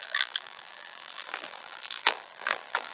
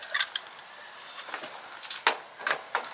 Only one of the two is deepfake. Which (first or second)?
first